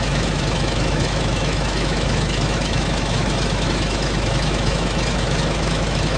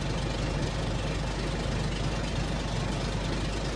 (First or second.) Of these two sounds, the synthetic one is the first